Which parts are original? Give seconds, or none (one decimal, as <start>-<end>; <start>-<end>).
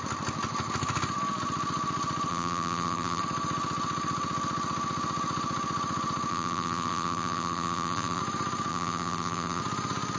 0.0-2.3; 3.2-6.3; 8.2-8.7; 9.6-10.2